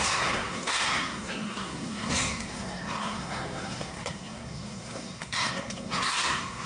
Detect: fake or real fake